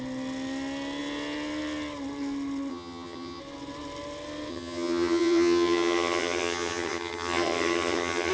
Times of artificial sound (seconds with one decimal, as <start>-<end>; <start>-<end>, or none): 2.7-3.4; 4.5-8.3